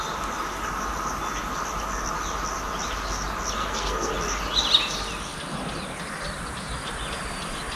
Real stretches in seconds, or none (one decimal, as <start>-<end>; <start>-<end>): 0.0-3.6; 4.1-7.8